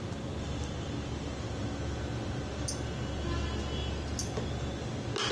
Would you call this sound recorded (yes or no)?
yes